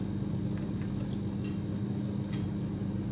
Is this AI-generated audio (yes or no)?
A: no